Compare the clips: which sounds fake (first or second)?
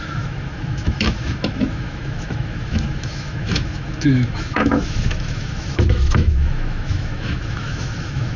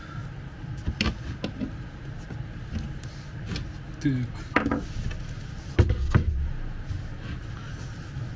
first